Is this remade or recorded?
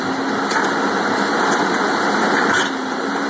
recorded